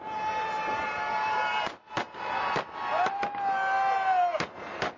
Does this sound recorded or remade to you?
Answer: recorded